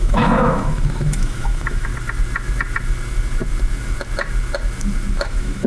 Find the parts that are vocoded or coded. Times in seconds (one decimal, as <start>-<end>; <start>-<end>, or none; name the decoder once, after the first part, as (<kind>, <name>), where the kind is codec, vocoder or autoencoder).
0.0-1.9 (autoencoder, DAC-VAE); 5.1-5.7